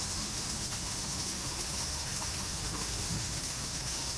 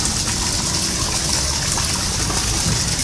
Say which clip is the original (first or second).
second